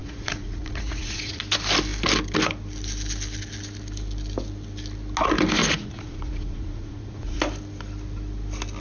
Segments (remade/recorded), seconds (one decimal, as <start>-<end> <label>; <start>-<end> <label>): 0.0-1.4 remade; 1.4-5.6 recorded; 5.6-7.4 remade; 7.4-8.8 recorded